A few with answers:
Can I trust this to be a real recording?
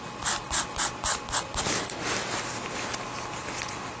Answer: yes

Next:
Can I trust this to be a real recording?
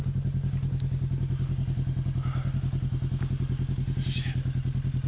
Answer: yes